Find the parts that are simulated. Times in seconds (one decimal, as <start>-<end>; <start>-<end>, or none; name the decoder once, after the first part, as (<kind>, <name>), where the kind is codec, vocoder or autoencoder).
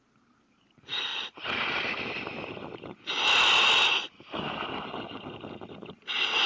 none